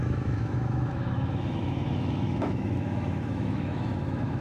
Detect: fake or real fake